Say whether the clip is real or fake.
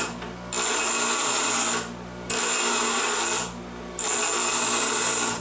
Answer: real